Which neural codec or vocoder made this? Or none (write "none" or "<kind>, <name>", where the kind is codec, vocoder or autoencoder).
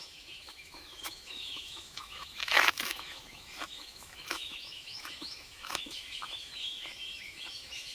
autoencoder, DAC-VAE